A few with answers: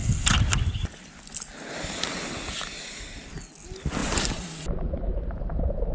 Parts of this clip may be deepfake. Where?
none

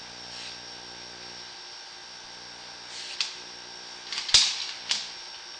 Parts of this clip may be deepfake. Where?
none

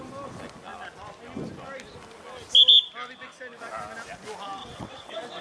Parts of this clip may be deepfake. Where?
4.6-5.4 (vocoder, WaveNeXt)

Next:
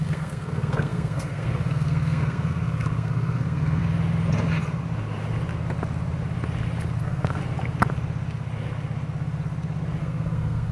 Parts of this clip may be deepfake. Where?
0.0-3.8 (codec, SNAC); 7.0-7.4; 10.0-10.7